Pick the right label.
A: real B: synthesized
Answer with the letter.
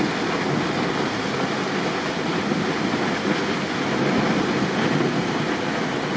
A